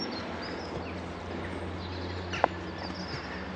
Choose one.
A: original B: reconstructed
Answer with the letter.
A